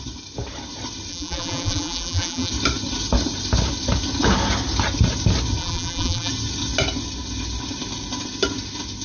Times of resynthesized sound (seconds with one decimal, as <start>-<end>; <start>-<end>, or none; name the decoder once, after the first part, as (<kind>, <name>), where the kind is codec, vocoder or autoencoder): 1.1-2.5 (vocoder, BigVGAN v2); 5.6-6.3